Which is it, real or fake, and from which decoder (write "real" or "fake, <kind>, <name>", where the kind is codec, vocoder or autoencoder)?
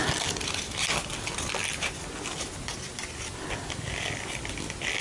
real